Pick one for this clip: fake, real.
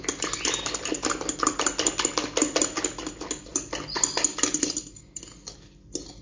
real